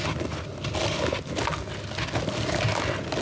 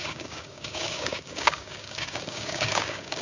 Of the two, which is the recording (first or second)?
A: first